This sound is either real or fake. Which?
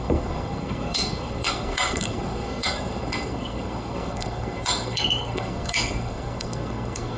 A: fake